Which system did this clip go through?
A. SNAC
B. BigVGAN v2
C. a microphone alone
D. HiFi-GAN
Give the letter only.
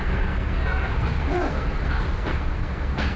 A